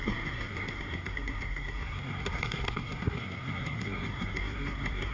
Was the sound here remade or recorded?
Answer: remade